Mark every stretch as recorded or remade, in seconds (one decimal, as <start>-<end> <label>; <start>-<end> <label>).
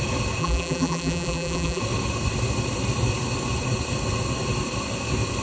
0.0-0.4 recorded; 0.4-1.8 remade; 1.8-5.4 recorded